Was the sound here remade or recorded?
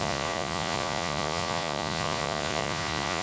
remade